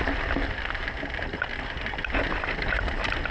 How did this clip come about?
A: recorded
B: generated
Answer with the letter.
A